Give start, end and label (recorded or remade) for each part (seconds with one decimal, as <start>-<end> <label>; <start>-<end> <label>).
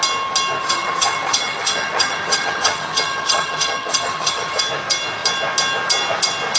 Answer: 0.0-0.6 recorded; 0.6-4.6 remade; 4.6-6.6 recorded